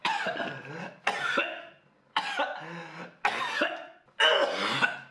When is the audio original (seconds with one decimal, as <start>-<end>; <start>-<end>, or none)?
0.0-5.1

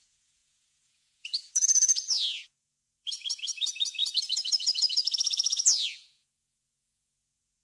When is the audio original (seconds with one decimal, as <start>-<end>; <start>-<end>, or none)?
none